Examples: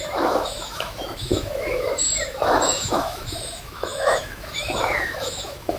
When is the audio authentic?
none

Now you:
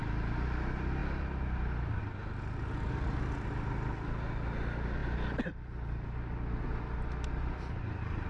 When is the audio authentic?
0.0-8.3

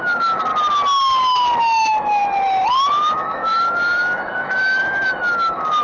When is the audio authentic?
0.5-1.6; 2.2-2.8

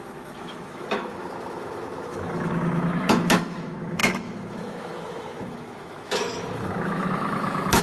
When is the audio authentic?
none

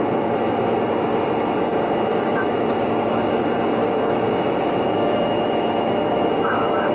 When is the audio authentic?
0.0-2.1; 3.3-3.8

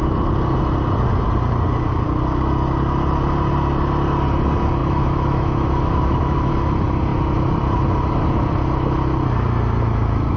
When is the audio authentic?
0.0-4.8; 6.5-10.4